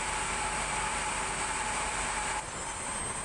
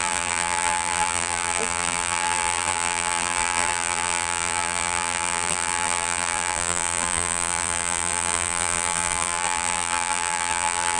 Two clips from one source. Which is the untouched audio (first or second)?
first